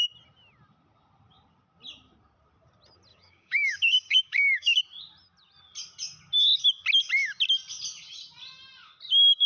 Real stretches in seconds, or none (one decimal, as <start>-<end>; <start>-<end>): 0.0-3.1; 4.8-9.5